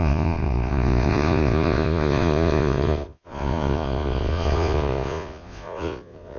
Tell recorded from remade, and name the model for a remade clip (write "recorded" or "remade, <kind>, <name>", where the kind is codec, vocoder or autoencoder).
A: remade, vocoder, Vocos